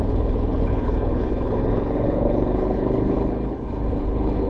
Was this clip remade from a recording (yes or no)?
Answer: yes